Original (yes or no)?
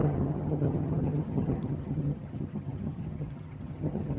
no